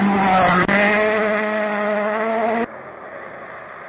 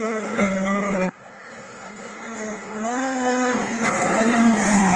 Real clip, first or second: first